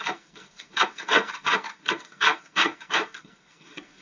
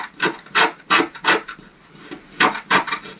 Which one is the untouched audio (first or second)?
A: second